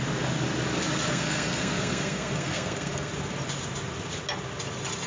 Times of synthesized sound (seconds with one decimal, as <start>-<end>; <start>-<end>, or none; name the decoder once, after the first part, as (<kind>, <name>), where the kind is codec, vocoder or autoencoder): 1.1-3.1 (codec, SNAC)